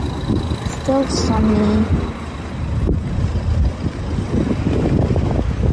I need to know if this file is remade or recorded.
recorded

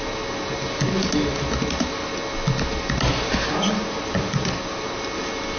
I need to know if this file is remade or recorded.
recorded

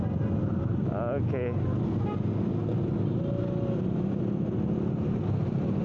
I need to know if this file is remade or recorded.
recorded